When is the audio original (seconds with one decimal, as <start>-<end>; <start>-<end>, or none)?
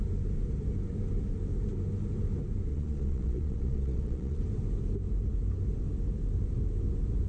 0.0-2.7; 4.4-7.3